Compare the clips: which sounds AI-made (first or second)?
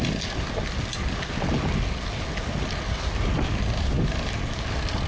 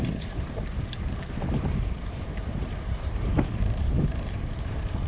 second